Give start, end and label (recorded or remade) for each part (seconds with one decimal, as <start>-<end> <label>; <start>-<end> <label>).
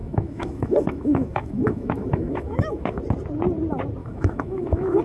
0.0-3.0 remade; 3.0-4.0 recorded; 4.0-5.0 remade